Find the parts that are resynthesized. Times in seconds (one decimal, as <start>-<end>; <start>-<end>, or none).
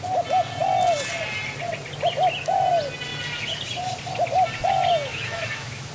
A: 5.1-5.9